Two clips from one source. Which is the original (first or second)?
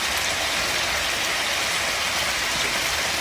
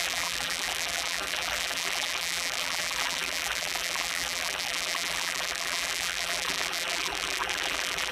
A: first